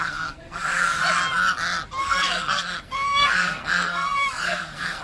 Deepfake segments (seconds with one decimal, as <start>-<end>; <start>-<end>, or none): 0.0-1.0; 2.0-5.0